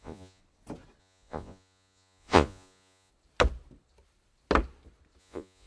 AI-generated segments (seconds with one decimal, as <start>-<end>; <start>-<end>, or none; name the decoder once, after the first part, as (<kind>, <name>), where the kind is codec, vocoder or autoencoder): 0.0-0.4 (vocoder, Vocos); 1.0-3.1; 5.2-5.7